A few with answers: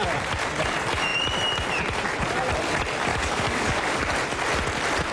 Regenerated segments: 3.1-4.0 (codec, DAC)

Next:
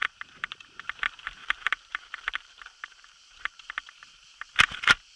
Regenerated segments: 0.0-0.8 (vocoder, BigVGAN v2); 1.4-4.5

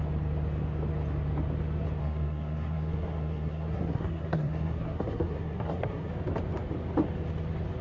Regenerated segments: 2.0-6.1 (codec, SNAC)

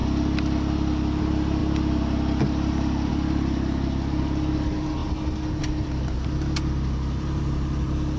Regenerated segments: none

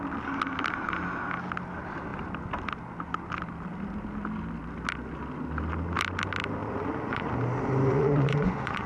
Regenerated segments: 6.6-7.3 (vocoder, Vocos); 7.9-8.9